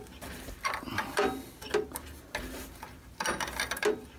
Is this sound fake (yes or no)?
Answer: no